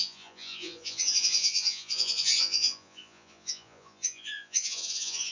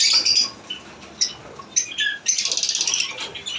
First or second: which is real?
second